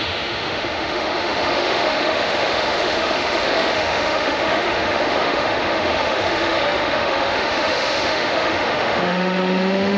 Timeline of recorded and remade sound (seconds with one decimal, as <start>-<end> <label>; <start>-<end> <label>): 0.0-10.0 remade